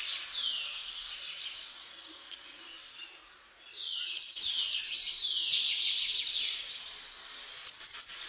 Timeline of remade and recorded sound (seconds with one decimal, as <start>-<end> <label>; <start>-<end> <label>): 0.0-0.8 recorded; 0.8-2.6 remade; 2.6-3.2 recorded; 3.2-4.4 remade; 4.4-8.3 recorded